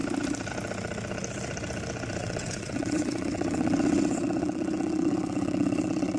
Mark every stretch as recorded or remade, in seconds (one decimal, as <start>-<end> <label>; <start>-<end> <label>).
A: 0.0-2.2 recorded; 2.2-6.2 remade